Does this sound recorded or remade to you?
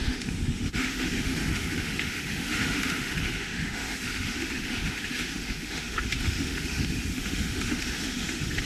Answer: remade